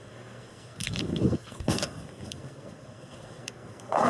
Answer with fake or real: fake